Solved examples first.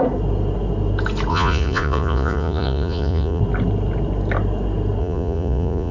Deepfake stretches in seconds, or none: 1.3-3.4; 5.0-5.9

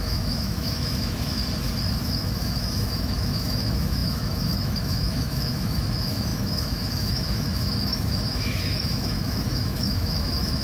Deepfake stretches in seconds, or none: 0.0-1.4; 2.0-10.6

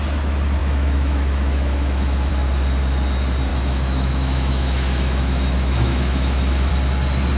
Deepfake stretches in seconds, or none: 0.6-2.3; 3.5-6.7

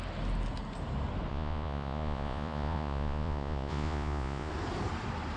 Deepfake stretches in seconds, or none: 1.3-4.5